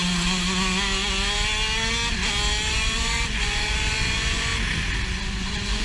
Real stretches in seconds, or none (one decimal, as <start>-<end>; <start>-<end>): 0.0-2.7; 4.5-5.2